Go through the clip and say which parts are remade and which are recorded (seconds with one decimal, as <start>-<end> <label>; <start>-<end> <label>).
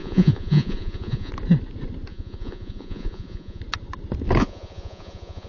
0.0-1.3 remade; 1.3-2.1 recorded; 2.1-3.6 remade; 3.6-4.4 recorded; 4.4-5.5 remade